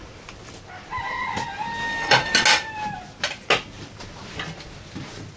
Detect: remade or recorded recorded